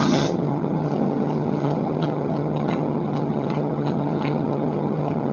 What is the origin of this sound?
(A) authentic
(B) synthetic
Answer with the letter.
B